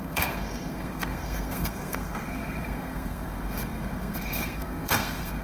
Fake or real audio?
fake